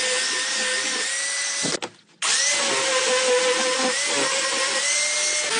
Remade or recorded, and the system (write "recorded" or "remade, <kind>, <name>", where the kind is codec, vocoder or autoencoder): recorded